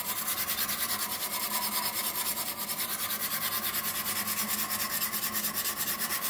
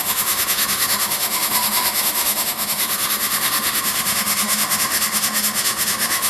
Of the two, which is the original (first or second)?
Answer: first